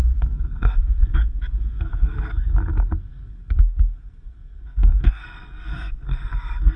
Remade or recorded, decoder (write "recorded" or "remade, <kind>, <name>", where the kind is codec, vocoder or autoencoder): remade, codec, SNAC